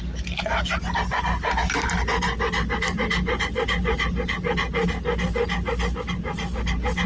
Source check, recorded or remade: recorded